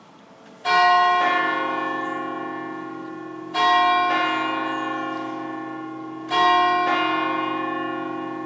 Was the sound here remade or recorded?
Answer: recorded